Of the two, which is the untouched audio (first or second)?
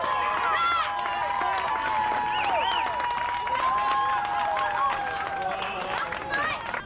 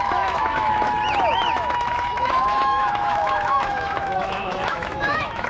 first